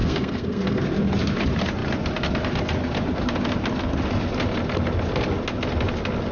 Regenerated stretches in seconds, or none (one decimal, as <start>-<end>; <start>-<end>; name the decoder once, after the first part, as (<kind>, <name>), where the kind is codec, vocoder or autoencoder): 0.0-0.8 (codec, SNAC)